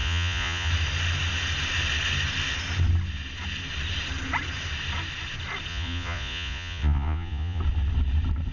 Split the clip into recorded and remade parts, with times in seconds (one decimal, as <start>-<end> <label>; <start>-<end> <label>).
0.0-0.7 remade; 0.7-5.7 recorded; 5.7-7.6 remade; 7.6-8.5 recorded